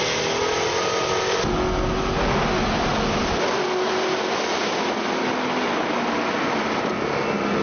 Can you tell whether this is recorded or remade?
recorded